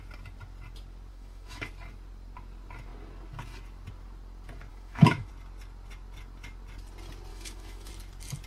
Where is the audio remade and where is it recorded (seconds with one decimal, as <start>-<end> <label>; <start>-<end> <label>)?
0.0-1.1 recorded; 1.1-1.7 remade; 1.7-4.7 recorded; 4.7-5.3 remade; 5.3-7.3 recorded; 7.3-7.9 remade; 7.9-8.5 recorded